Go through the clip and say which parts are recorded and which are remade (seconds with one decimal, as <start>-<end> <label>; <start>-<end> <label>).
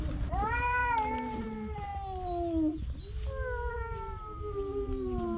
0.0-1.9 remade; 1.9-3.7 recorded; 3.7-5.4 remade